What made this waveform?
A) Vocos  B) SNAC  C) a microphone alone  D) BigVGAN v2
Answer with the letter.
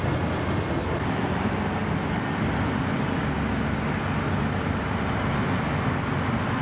C